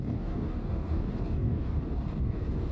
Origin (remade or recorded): remade